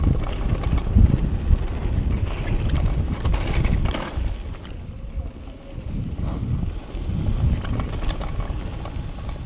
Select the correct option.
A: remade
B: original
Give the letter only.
B